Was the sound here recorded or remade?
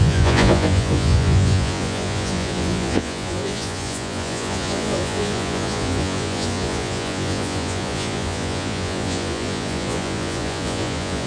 remade